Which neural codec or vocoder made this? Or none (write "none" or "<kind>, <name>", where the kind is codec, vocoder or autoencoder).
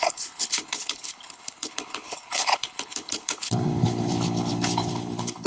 codec, HILCodec